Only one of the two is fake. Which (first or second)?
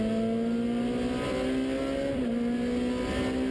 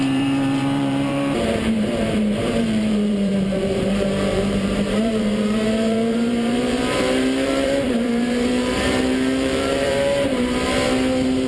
second